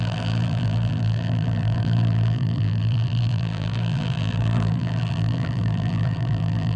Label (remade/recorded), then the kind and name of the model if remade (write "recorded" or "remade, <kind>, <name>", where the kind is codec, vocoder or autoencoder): remade, vocoder, BigVGAN v2